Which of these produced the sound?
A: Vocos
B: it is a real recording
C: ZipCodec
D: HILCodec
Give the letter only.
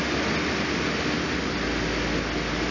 B